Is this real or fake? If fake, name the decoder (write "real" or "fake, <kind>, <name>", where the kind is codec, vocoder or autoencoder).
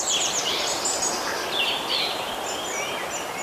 real